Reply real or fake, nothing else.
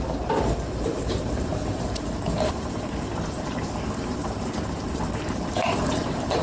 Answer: fake